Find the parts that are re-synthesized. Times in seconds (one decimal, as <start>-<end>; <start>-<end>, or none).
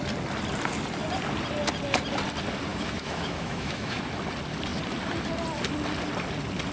2.7-4.0